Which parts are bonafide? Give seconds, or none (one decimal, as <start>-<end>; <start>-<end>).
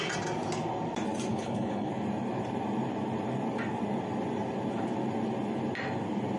0.0-1.3; 1.9-6.4